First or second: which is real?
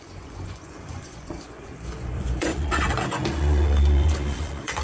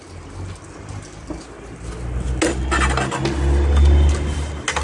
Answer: second